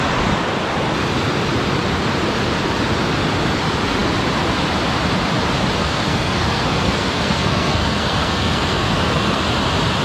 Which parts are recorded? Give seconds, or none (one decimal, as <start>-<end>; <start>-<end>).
0.0-5.8; 9.4-10.0